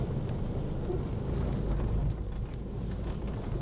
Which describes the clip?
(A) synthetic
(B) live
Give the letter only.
B